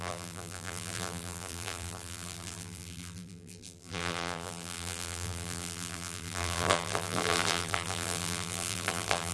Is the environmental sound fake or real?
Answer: fake